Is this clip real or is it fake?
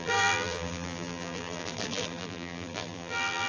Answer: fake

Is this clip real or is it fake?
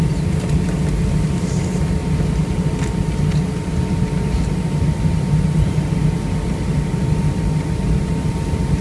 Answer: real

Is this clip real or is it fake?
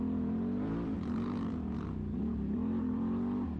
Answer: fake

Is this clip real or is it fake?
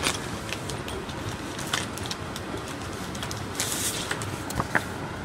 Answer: real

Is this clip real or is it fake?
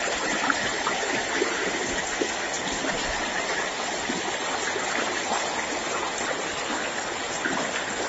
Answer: real